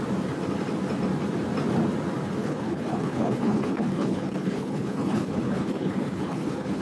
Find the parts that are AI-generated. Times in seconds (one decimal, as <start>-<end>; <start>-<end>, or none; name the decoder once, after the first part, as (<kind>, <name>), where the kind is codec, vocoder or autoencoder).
2.4-6.8 (codec, HILCodec)